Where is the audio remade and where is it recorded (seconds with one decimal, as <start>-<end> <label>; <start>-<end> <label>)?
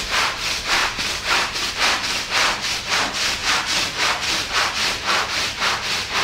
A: 0.0-6.2 remade